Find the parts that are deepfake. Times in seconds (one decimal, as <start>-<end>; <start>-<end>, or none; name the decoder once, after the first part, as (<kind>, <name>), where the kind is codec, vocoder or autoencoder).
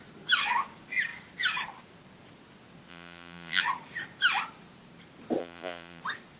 2.9-3.6 (vocoder, BigVGAN v2); 5.4-6.0